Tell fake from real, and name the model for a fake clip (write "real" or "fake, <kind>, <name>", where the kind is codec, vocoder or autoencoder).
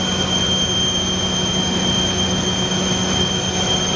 real